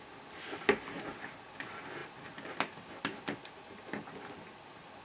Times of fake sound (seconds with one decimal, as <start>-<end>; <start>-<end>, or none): none